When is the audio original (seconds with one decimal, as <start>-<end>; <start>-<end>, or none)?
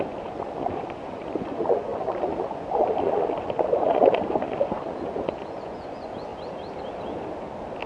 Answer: 6.3-7.9